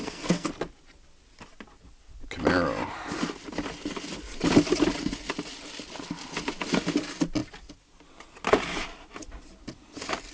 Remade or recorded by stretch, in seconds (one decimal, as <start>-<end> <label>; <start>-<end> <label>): 0.0-0.5 remade; 0.5-10.3 recorded